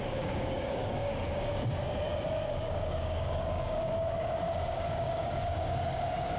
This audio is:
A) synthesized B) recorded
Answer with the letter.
A